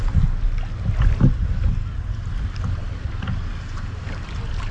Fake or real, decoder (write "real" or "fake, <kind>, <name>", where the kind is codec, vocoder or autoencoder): real